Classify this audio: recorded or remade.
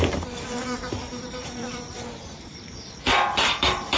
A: remade